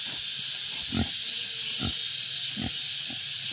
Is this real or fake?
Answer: real